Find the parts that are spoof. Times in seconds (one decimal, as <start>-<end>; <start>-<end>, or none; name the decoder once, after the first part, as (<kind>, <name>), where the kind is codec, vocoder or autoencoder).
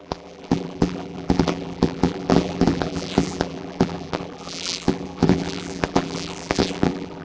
0.0-7.2 (vocoder, BigVGAN v2)